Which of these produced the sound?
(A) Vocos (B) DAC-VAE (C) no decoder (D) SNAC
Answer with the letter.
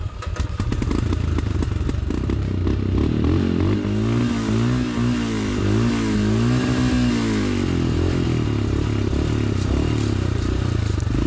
C